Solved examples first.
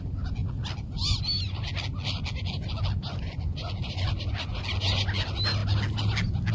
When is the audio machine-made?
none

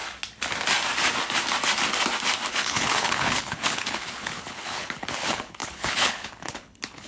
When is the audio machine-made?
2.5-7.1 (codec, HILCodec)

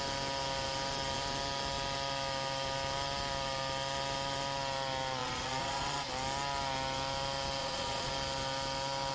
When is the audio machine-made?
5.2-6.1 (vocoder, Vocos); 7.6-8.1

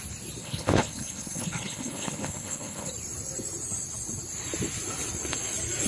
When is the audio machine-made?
0.4-2.9 (codec, HILCodec)

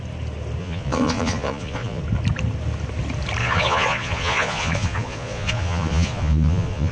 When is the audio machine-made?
0.6-2.0 (vocoder, Vocos); 3.4-6.9